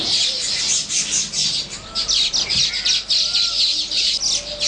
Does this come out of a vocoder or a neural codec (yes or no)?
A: no